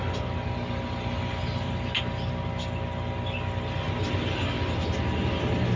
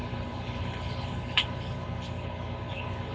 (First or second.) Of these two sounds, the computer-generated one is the second